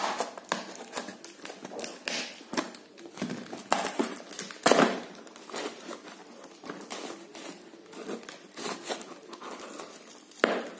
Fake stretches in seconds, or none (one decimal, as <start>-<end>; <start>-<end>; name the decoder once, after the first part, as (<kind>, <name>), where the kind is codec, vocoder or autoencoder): none